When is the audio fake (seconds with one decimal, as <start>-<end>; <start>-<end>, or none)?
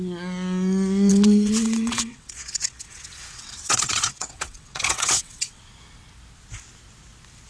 1.1-5.6